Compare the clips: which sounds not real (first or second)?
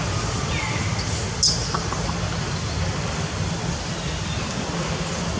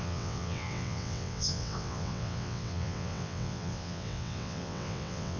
second